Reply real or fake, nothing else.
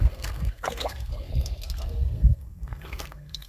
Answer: fake